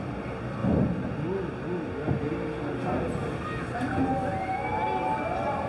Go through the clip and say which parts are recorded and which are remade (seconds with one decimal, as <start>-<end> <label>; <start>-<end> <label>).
0.0-5.7 recorded